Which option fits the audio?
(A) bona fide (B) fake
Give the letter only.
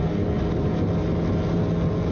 A